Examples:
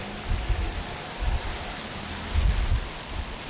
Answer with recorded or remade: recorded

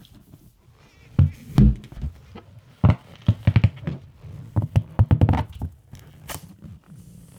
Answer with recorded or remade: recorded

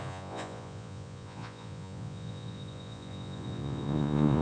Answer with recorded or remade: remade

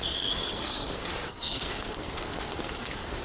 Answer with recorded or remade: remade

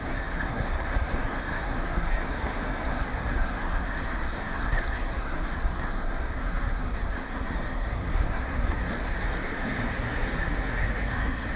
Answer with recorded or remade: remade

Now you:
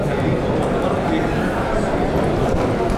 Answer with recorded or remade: recorded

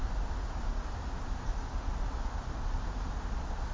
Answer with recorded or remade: recorded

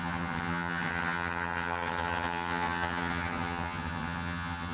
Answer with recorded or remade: remade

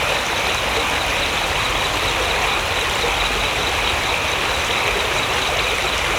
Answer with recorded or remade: recorded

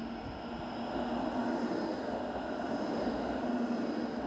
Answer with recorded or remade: recorded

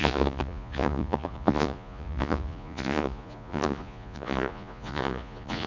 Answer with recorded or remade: remade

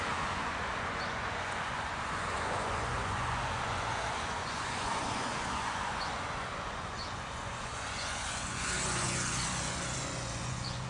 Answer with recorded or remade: remade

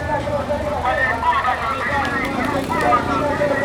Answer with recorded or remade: recorded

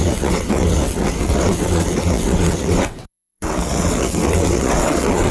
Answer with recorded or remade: remade